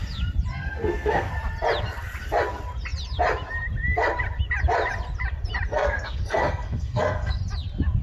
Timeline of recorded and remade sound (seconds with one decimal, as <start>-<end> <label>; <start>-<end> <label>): 0.0-0.5 recorded; 0.5-1.3 remade; 1.3-5.7 recorded; 5.7-7.4 remade; 7.4-8.0 recorded